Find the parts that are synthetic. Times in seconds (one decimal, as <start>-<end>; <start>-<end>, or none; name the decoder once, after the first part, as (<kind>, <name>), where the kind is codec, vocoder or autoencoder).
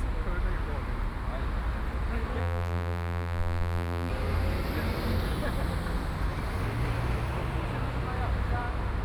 2.4-4.1 (vocoder, BigVGAN v2)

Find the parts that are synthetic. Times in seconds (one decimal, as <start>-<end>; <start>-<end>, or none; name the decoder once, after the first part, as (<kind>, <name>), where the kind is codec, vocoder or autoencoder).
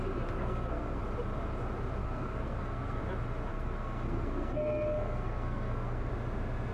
0.4-1.0 (codec, SNAC); 2.0-3.0; 3.5-6.1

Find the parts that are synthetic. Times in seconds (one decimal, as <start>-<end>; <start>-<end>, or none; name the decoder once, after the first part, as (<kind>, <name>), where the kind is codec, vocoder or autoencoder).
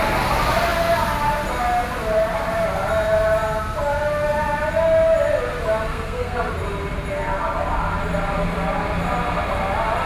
5.9-6.5 (codec, SNAC)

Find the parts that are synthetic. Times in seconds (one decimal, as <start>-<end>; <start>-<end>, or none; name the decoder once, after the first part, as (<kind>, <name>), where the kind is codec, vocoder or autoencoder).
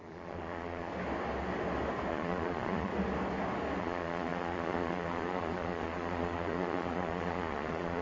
0.0-0.9 (vocoder, Vocos); 2.1-2.9; 3.8-8.0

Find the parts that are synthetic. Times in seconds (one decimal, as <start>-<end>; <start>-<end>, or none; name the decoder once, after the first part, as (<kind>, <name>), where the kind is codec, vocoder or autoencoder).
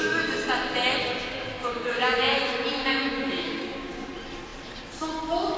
1.0-2.4 (codec, DAC); 2.8-4.1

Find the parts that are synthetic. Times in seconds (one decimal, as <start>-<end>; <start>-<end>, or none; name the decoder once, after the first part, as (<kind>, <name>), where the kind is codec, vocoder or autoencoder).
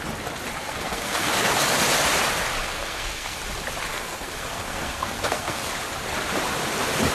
0.5-1.5 (codec, SNAC); 2.6-3.4; 3.9-5.7